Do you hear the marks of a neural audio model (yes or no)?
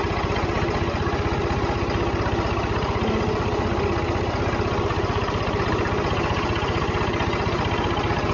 no